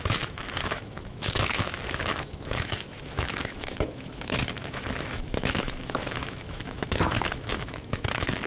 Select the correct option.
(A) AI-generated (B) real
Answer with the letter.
A